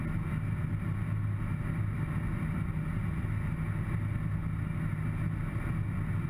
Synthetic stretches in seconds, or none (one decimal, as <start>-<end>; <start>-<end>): none

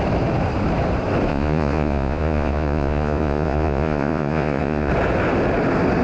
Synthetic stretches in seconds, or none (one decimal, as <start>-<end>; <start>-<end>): 1.3-4.9

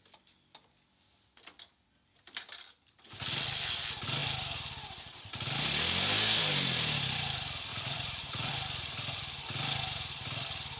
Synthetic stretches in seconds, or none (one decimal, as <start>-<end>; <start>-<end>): 7.7-8.5

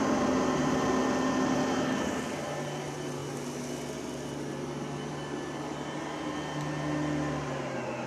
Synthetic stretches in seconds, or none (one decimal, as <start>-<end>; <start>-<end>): 0.0-3.2; 5.1-8.1

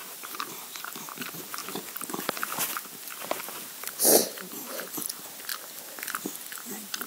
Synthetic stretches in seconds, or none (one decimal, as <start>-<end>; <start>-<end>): 0.0-0.8; 4.2-4.9

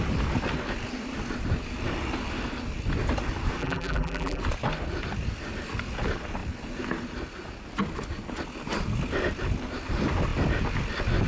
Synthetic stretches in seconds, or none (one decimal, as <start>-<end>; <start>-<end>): 3.6-4.4

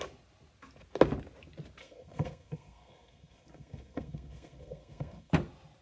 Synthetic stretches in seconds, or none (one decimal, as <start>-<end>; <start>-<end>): 1.8-5.3

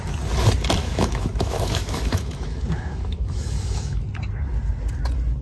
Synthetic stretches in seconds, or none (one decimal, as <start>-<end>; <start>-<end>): 0.8-4.0